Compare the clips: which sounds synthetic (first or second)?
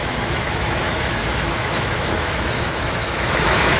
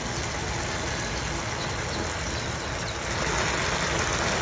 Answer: first